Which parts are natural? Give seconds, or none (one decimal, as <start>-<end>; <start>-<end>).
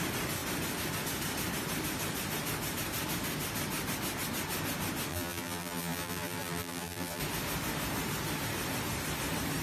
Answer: 0.0-5.1; 7.2-9.6